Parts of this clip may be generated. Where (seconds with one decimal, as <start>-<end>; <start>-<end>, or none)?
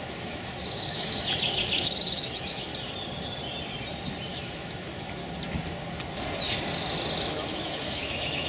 0.0-2.7; 4.3-5.2; 7.5-8.5